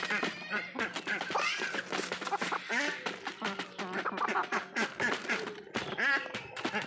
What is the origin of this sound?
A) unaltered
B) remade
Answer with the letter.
A